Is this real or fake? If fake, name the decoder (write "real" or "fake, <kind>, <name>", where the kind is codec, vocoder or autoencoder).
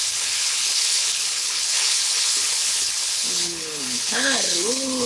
fake, codec, HILCodec